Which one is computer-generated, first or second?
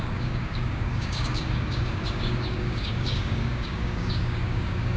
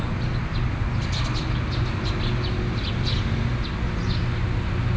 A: first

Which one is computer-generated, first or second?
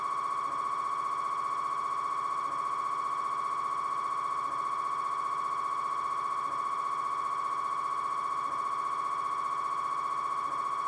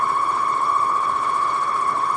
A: second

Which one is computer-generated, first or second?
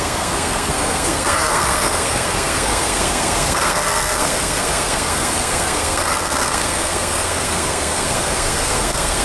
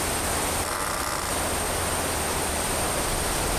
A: first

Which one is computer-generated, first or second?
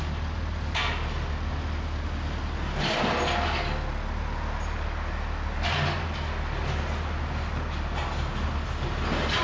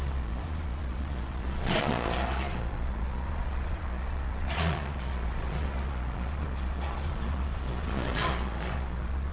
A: second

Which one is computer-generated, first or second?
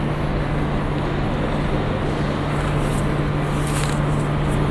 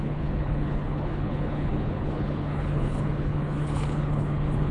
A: second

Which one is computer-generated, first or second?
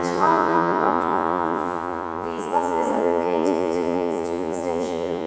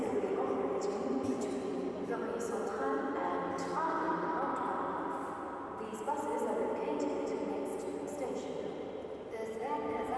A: first